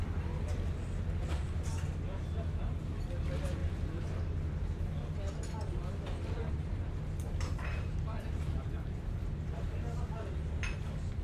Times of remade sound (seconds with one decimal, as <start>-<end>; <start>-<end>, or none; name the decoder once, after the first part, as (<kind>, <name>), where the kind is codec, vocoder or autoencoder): none